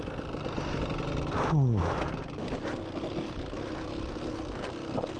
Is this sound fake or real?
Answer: real